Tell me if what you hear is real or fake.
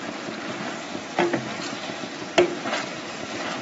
real